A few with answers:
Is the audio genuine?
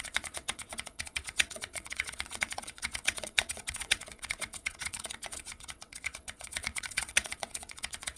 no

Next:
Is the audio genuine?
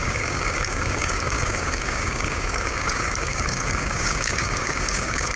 no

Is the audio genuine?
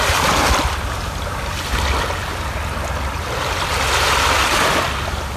yes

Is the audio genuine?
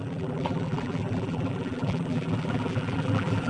no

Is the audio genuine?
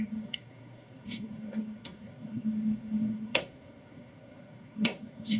no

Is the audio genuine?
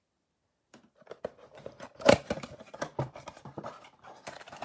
no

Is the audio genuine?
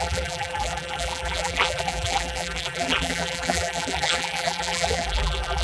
no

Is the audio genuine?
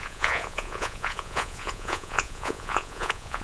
no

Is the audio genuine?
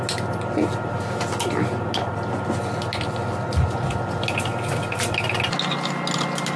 yes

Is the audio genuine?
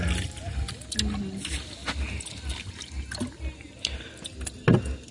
yes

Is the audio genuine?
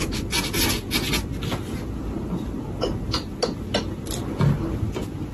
yes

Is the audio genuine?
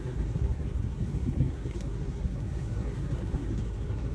no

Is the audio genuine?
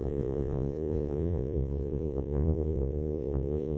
no